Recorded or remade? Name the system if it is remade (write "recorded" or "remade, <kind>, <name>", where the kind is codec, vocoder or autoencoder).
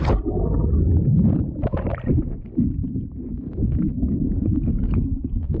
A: recorded